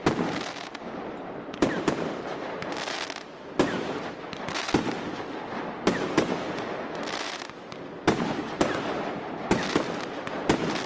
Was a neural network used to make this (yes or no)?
no